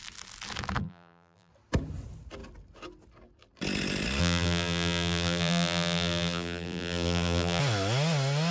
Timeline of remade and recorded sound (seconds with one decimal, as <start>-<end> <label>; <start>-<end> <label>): 0.0-0.8 recorded; 0.8-1.5 remade; 1.5-4.2 recorded; 4.2-7.6 remade; 7.6-8.5 recorded